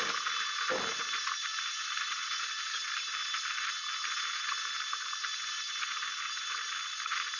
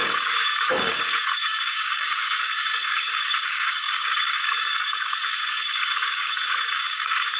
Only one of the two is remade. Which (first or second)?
second